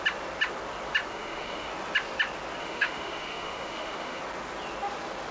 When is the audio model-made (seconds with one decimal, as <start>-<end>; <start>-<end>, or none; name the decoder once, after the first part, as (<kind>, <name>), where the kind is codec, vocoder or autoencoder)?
1.1-1.7 (autoencoder, DAC-VAE); 2.6-4.2

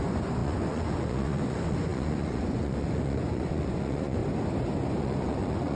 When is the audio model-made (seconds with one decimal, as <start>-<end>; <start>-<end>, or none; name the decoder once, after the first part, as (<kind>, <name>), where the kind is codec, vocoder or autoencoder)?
0.0-4.2 (vocoder, Vocos); 5.0-5.8

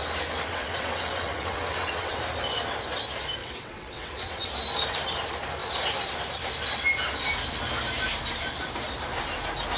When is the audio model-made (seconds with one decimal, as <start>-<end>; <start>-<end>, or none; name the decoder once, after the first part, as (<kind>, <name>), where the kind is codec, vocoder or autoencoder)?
0.4-2.2 (vocoder, WaveNeXt); 3.4-4.5

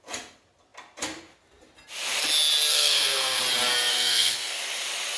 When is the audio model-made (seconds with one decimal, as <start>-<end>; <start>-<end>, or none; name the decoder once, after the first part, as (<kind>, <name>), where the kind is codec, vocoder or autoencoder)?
2.7-3.4 (codec, SNAC); 3.9-4.6

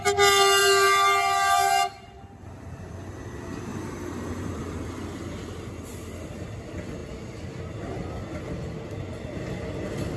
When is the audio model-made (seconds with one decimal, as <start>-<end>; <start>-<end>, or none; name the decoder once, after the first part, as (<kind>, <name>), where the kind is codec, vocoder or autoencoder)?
0.6-3.2 (vocoder, BigVGAN v2); 3.7-4.6

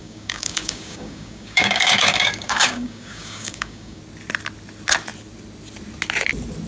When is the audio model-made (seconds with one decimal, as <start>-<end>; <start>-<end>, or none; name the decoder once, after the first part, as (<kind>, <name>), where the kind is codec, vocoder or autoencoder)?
0.0-4.0 (codec, DAC)